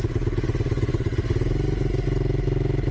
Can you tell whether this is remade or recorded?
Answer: recorded